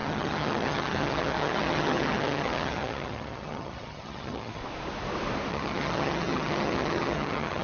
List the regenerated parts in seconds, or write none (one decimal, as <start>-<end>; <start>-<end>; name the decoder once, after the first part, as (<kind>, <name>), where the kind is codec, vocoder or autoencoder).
0.0-4.6 (vocoder, HiFi-GAN); 5.5-7.6